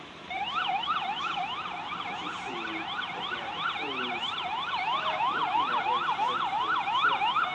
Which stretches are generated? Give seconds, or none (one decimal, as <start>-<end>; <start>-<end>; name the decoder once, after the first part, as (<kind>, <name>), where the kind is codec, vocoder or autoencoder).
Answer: none